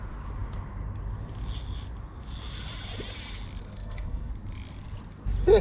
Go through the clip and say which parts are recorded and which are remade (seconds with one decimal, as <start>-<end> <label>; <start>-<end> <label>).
0.0-3.6 recorded; 3.6-4.3 remade; 4.3-5.6 recorded